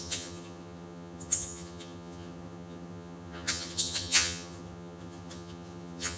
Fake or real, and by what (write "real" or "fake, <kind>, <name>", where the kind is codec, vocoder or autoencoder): fake, vocoder, HiFi-GAN